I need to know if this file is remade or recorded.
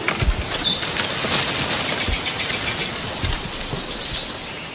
recorded